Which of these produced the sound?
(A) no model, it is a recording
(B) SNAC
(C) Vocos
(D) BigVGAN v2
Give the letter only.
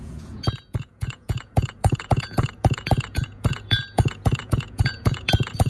C